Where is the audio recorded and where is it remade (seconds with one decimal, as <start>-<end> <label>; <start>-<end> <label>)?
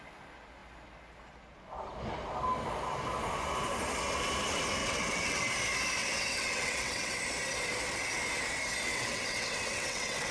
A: 0.0-4.8 recorded; 4.8-5.5 remade; 5.5-6.0 recorded; 6.0-7.2 remade; 7.2-8.9 recorded; 8.9-10.3 remade